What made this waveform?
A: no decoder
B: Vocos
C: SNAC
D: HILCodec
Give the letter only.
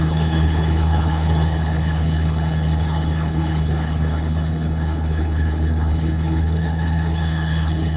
D